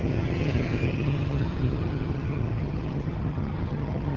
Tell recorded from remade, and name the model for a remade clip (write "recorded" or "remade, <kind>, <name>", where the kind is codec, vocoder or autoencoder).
remade, vocoder, HiFi-GAN